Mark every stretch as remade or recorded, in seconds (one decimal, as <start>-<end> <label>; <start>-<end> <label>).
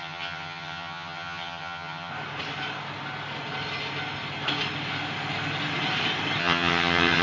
0.0-2.1 remade; 2.1-6.4 recorded; 6.4-7.2 remade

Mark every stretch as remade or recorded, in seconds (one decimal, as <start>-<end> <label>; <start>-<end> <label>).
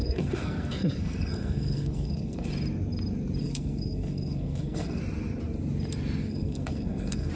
0.0-2.5 remade; 2.5-3.4 recorded; 3.4-5.0 remade; 5.0-6.2 recorded; 6.2-7.3 remade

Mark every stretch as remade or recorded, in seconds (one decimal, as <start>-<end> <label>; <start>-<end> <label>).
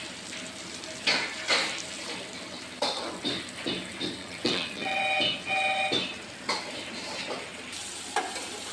0.0-4.2 recorded; 4.2-5.0 remade; 5.0-8.7 recorded